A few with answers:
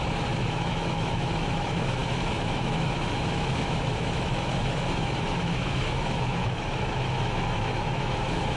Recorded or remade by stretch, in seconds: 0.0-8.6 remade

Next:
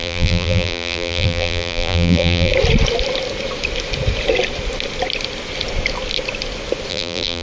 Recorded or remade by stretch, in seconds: 0.0-2.5 remade; 2.5-6.9 recorded; 6.9-7.4 remade

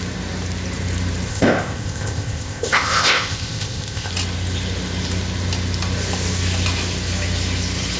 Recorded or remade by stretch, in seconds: 0.0-1.3 recorded; 1.3-4.1 remade; 4.1-8.0 recorded

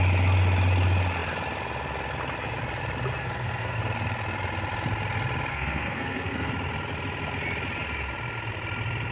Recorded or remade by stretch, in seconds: 0.0-3.2 recorded; 3.2-3.8 remade; 3.8-5.5 recorded; 5.5-6.5 remade; 6.5-9.1 recorded